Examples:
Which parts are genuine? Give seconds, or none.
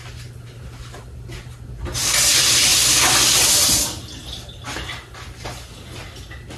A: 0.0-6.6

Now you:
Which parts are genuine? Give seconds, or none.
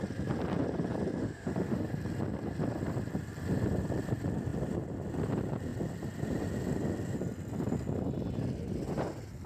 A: 0.0-1.2; 1.9-9.5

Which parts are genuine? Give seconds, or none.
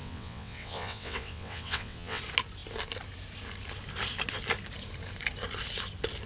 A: 2.2-6.3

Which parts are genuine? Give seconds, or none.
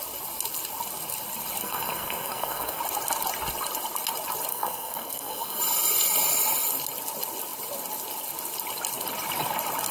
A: 0.0-1.6; 2.8-4.5; 5.6-9.9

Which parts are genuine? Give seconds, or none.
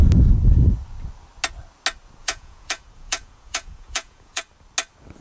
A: 0.0-2.2; 4.4-5.2